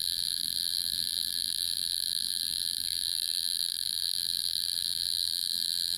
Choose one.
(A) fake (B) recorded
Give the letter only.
A